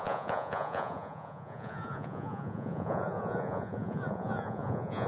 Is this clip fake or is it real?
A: fake